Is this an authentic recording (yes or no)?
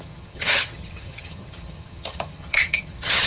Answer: no